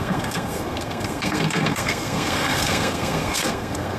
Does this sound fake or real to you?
fake